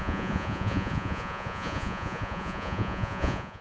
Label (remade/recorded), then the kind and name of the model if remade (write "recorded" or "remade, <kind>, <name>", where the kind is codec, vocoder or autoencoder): remade, vocoder, Vocos